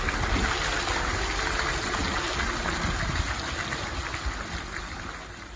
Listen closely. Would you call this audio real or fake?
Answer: real